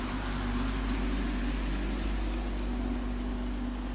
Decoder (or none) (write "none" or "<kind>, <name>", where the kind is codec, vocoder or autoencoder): none